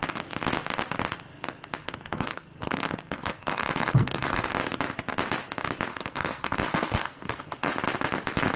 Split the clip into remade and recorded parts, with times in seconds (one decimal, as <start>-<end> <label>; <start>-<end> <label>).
0.0-1.8 recorded; 1.8-4.5 remade; 4.5-5.9 recorded; 5.9-7.7 remade; 7.7-8.6 recorded